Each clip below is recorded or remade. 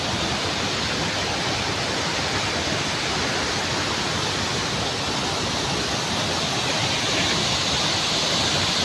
recorded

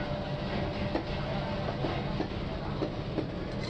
recorded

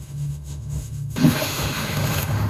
remade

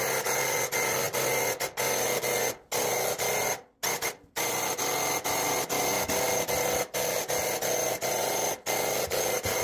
recorded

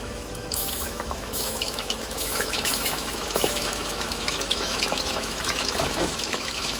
remade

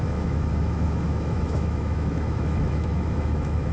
remade